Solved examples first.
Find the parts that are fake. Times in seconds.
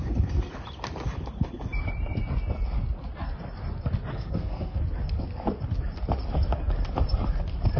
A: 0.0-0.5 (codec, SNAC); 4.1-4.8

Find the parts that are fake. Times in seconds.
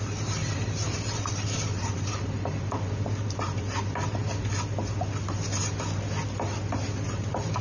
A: 0.0-4.2 (vocoder, BigVGAN v2); 7.1-7.6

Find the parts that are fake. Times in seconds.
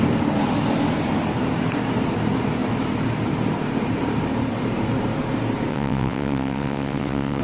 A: 5.7-7.4 (vocoder, WaveNeXt)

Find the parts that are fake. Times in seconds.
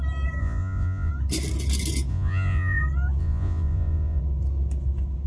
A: 0.4-1.1 (vocoder, Vocos); 2.1-2.8; 3.2-4.2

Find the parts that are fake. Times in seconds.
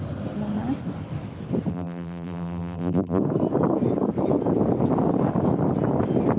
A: 1.7-3.2 (vocoder, BigVGAN v2)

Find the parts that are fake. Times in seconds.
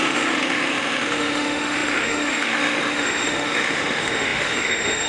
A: 0.0-5.1 (autoencoder, DAC-VAE)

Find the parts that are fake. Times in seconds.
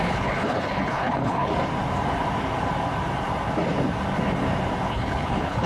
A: 0.0-1.5 (codec, HILCodec); 4.9-5.7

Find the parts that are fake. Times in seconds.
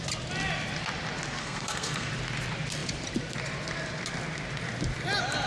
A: 1.4-2.1 (codec, SNAC)